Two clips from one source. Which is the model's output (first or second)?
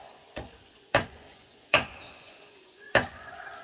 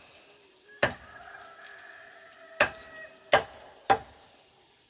first